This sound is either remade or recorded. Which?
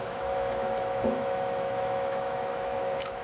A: remade